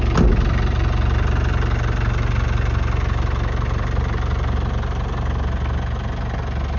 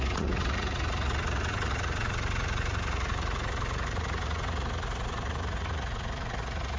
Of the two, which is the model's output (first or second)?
second